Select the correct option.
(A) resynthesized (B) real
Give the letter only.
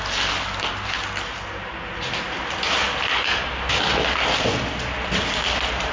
B